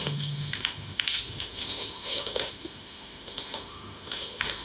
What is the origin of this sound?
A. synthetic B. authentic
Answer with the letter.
A